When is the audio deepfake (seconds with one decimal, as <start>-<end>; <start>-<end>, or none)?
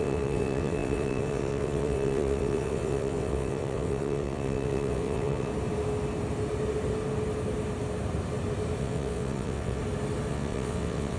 0.0-5.5; 8.8-9.8; 10.3-11.2